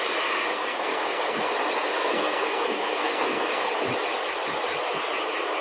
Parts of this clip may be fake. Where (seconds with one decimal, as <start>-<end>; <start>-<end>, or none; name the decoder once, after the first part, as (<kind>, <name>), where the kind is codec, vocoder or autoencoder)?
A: 0.5-1.5 (codec, SNAC); 2.0-3.7